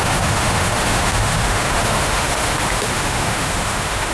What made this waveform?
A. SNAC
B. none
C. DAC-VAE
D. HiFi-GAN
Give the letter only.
C